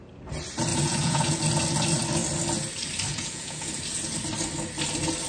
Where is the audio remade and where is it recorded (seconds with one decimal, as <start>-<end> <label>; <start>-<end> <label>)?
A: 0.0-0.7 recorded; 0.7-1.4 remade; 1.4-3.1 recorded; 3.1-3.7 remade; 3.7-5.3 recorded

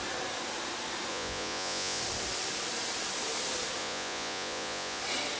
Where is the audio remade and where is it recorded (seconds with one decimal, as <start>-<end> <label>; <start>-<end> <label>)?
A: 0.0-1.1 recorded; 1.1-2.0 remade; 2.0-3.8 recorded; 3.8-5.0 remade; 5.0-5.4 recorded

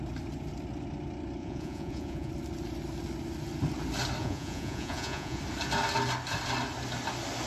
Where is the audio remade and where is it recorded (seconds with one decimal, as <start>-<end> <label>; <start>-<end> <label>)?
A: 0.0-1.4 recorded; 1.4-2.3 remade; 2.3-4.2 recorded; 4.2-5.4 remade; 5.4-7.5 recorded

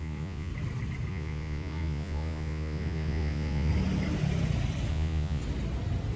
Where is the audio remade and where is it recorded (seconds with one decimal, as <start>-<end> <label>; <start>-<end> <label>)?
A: 0.0-0.5 remade; 0.5-1.1 recorded; 1.1-3.7 remade; 3.7-4.9 recorded; 4.9-5.4 remade; 5.4-6.2 recorded

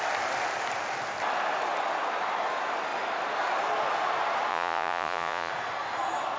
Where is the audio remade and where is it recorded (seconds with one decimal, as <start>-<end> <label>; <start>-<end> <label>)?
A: 0.0-4.5 recorded; 4.5-5.5 remade; 5.5-6.4 recorded

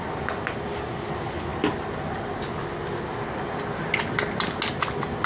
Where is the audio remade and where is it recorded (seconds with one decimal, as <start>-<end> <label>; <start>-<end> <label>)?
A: 0.0-5.3 recorded